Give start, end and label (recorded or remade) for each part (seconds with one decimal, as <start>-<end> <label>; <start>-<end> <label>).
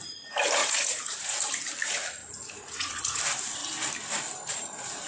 0.0-0.6 recorded; 0.6-1.5 remade; 1.5-2.2 recorded; 2.2-3.2 remade; 3.2-5.1 recorded